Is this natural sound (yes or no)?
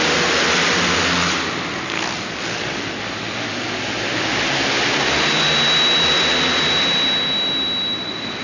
yes